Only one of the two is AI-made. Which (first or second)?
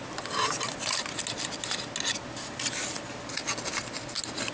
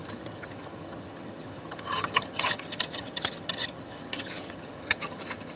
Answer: second